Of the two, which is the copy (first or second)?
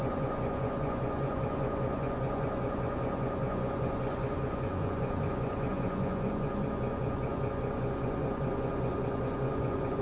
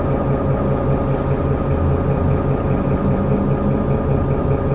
first